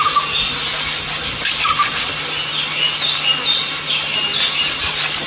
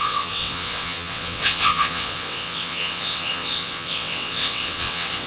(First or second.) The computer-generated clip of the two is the second